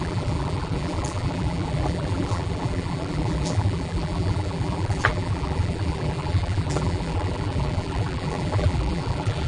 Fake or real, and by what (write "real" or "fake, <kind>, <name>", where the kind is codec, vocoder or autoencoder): fake, vocoder, BigVGAN v2